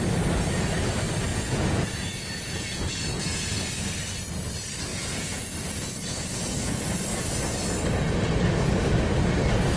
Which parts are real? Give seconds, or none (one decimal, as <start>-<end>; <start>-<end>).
0.0-1.3; 3.7-4.9; 6.8-9.8